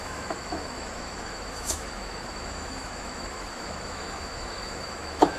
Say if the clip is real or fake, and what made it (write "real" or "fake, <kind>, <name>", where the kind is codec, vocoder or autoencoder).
fake, autoencoder, DAC-VAE